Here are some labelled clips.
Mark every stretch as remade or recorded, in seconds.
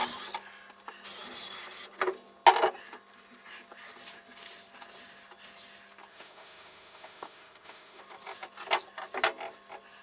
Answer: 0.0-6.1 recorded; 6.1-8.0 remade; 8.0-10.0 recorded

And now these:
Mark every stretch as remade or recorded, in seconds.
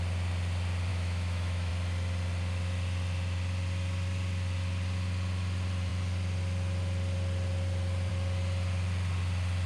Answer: 0.0-0.9 recorded; 0.9-1.7 remade; 1.7-9.7 recorded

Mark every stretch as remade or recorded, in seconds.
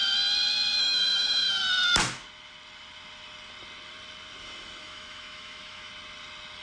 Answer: 0.0-0.8 recorded; 0.8-1.6 remade; 1.6-4.8 recorded; 4.8-5.9 remade; 5.9-6.6 recorded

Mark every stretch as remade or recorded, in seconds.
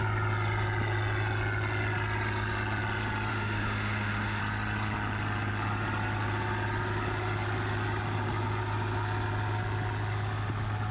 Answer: 0.0-3.3 recorded; 3.3-4.4 remade; 4.4-10.9 recorded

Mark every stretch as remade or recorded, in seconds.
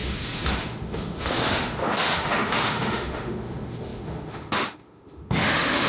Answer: 0.0-5.9 remade